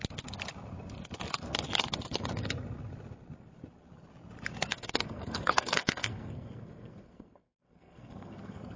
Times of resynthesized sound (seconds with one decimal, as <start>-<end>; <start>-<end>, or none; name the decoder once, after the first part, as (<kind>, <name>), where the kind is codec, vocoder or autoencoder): 4.7-8.8 (codec, SNAC)